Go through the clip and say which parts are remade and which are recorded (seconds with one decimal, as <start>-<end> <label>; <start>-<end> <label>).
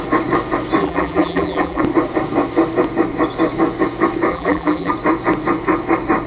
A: 0.0-0.8 recorded; 0.8-1.8 remade; 1.8-4.3 recorded; 4.3-4.9 remade; 4.9-6.3 recorded